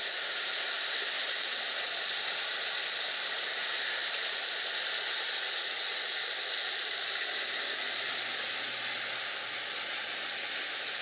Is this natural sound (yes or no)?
yes